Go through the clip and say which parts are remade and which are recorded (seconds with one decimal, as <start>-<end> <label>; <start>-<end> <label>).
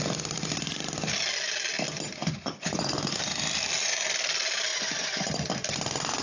0.0-2.2 recorded; 2.2-2.9 remade; 2.9-4.7 recorded; 4.7-5.3 remade; 5.3-6.2 recorded